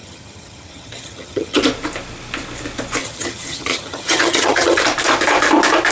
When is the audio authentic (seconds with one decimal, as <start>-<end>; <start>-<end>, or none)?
1.6-3.0; 4.8-5.9